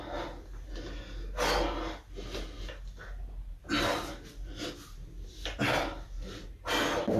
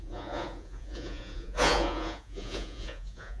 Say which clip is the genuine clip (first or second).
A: first